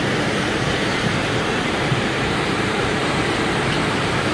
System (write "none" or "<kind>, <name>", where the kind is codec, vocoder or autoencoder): vocoder, BigVGAN v2